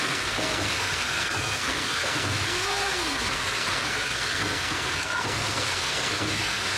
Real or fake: fake